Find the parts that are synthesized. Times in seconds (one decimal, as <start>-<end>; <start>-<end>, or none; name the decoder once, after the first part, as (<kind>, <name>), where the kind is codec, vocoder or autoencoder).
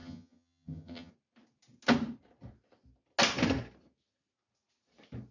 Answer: 0.0-1.1 (vocoder, HiFi-GAN)